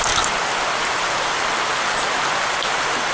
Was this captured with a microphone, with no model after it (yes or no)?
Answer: yes